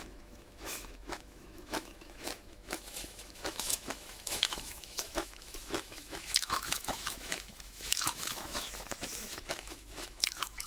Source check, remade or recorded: remade